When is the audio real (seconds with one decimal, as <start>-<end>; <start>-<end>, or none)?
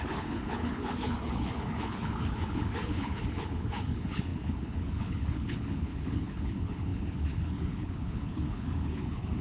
none